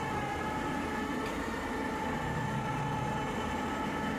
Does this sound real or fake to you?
real